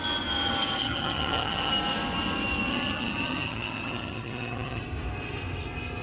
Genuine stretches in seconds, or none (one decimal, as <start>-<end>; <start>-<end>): 0.0-0.8; 1.7-2.7; 4.8-6.0